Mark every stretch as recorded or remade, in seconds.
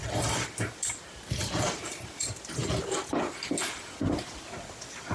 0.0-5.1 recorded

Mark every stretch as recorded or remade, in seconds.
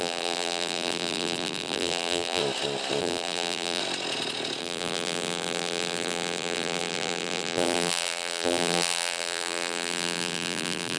0.0-2.4 remade; 2.4-3.0 recorded; 3.0-3.8 remade; 3.8-4.6 recorded; 4.6-11.0 remade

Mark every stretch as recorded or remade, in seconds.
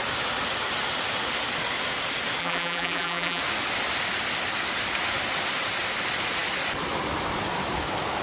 0.0-2.4 recorded; 2.4-3.4 remade; 3.4-8.2 recorded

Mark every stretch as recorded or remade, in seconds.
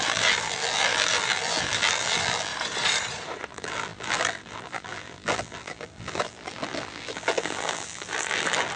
0.0-2.5 remade; 2.5-3.5 recorded; 3.5-8.8 remade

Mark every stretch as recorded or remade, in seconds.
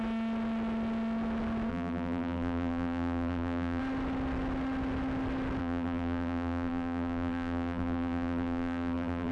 0.0-1.7 recorded; 1.7-3.8 remade; 3.8-5.6 recorded; 5.6-9.3 remade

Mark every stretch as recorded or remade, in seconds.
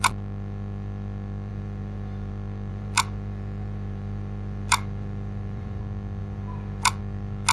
0.0-1.5 recorded; 1.5-2.3 remade; 2.3-2.7 recorded; 2.7-5.8 remade; 5.8-6.2 recorded; 6.2-7.0 remade; 7.0-7.5 recorded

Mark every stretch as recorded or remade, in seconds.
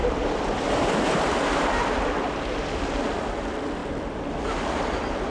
0.0-3.2 remade; 3.2-5.3 recorded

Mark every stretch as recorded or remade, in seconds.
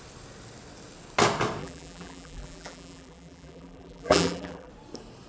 0.0-1.6 recorded; 1.6-4.7 remade; 4.7-5.3 recorded